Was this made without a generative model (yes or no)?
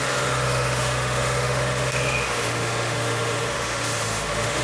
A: no